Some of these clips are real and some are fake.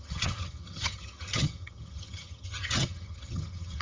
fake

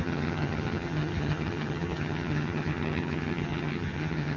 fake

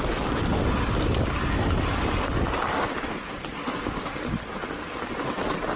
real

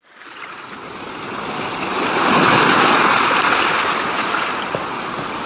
real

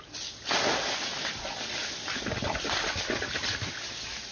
real